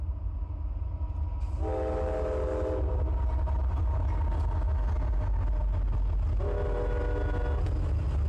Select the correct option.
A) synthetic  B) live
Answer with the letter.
B